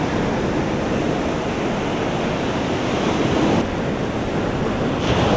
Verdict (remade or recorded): recorded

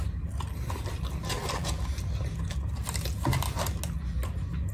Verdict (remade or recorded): recorded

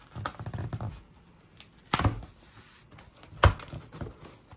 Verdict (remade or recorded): recorded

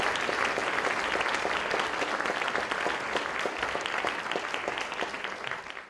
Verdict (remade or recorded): recorded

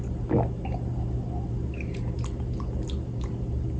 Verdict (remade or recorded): recorded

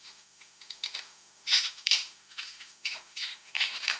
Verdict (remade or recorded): remade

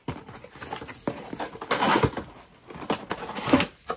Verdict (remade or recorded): recorded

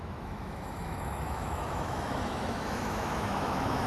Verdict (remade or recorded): remade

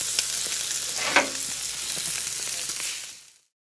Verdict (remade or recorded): recorded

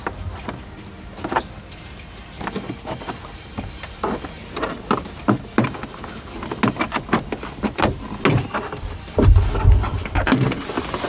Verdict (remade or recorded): recorded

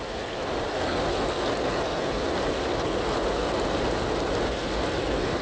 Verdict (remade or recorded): recorded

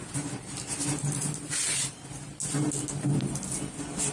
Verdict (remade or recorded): recorded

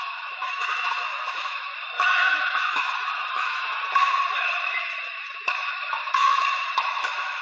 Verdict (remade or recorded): remade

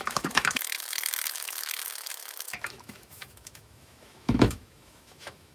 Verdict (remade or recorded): remade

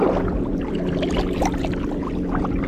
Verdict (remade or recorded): recorded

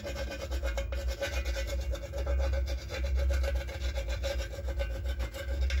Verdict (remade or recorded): recorded